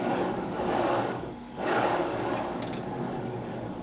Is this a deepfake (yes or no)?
yes